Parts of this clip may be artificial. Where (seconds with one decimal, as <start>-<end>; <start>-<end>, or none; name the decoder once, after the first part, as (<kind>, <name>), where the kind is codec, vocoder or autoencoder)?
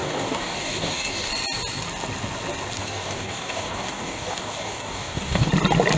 0.0-1.3 (codec, DAC); 2.8-5.5